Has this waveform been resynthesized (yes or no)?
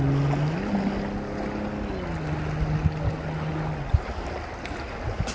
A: no